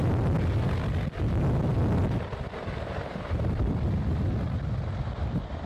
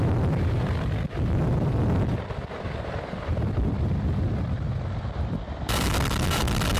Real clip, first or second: first